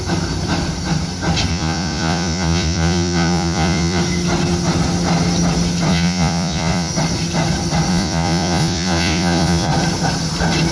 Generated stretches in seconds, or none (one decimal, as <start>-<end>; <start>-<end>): 1.5-4.0; 5.9-6.9; 7.9-9.7